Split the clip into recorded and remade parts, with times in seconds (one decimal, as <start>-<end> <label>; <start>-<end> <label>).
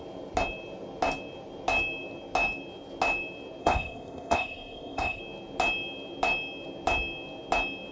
0.0-3.6 recorded; 3.6-5.2 remade; 5.2-7.9 recorded